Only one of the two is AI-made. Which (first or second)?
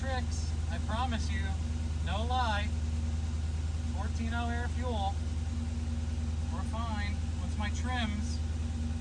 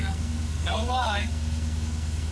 second